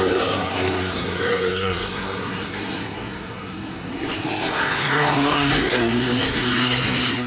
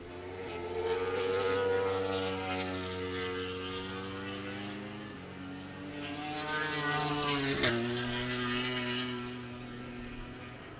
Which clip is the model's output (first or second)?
first